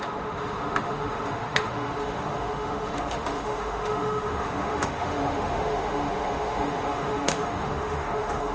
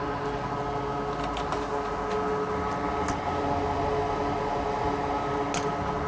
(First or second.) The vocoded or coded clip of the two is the first